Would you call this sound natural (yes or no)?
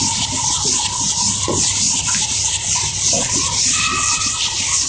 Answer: no